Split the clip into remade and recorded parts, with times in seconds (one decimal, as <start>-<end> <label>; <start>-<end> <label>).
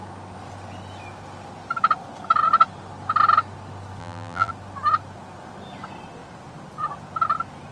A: 0.0-4.0 recorded; 4.0-4.5 remade; 4.5-7.7 recorded